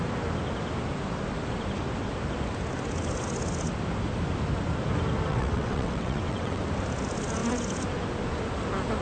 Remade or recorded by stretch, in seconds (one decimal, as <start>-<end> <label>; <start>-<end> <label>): 0.0-5.3 recorded; 5.3-6.6 remade; 6.6-9.0 recorded